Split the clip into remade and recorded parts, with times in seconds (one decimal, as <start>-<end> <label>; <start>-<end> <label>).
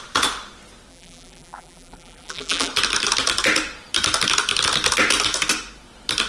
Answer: 0.0-0.9 recorded; 0.9-2.7 remade; 2.7-6.3 recorded